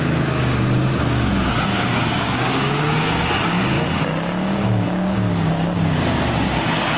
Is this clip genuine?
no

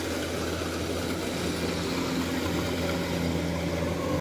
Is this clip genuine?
yes